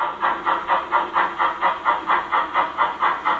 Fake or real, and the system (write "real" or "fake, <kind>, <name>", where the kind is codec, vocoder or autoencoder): real